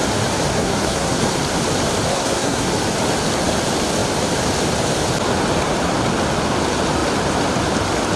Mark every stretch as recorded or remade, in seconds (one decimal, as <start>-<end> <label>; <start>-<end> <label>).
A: 0.0-0.5 recorded; 0.5-1.2 remade; 1.2-2.1 recorded; 2.1-2.7 remade; 2.7-8.2 recorded

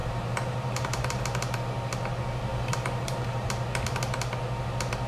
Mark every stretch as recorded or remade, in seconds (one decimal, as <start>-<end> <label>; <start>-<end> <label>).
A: 0.0-1.2 remade; 1.2-2.5 recorded; 2.5-3.5 remade; 3.5-5.1 recorded

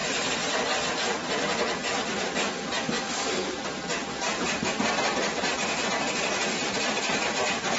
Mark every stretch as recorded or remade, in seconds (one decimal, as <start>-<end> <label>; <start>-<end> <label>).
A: 0.0-4.2 recorded; 4.2-7.8 remade

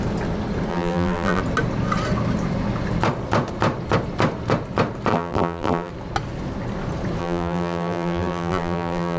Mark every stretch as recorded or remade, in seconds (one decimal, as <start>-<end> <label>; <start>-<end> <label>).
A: 0.0-0.7 recorded; 0.7-1.4 remade; 1.4-5.1 recorded; 5.1-5.9 remade; 5.9-7.2 recorded; 7.2-9.2 remade

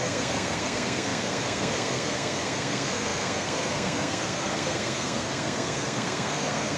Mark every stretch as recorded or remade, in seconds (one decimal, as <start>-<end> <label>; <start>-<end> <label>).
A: 0.0-6.8 remade

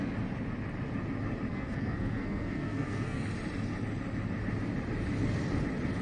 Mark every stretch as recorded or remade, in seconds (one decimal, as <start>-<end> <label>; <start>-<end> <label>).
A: 0.0-1.5 recorded; 1.5-3.2 remade; 3.2-6.0 recorded